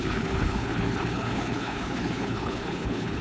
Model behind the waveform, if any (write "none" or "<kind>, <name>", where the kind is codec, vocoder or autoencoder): codec, HILCodec